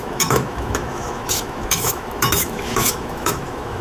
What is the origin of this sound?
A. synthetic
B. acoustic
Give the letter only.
A